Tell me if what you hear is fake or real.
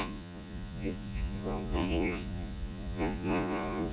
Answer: fake